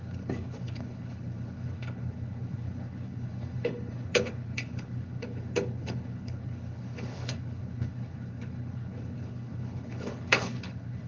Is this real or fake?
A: fake